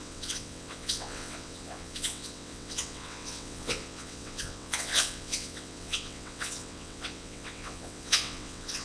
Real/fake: fake